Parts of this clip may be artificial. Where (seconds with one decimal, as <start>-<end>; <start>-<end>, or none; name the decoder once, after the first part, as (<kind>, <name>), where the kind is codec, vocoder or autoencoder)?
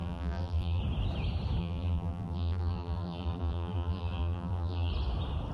0.0-0.8 (vocoder, BigVGAN v2); 1.6-4.9